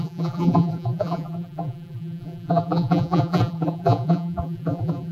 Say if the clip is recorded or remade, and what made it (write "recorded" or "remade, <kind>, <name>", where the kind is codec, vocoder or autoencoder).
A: remade, vocoder, BigVGAN v2